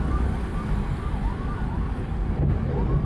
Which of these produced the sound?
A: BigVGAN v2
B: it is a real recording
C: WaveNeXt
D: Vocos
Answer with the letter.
B